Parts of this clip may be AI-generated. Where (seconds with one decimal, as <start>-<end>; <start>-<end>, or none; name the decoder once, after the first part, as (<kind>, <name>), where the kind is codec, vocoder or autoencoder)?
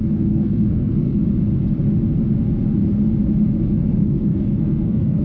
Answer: 0.0-1.2 (codec, SNAC); 3.6-5.2